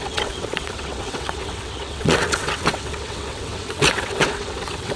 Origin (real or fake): fake